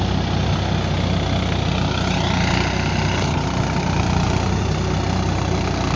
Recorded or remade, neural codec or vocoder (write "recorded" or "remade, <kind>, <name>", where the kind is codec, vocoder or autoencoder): recorded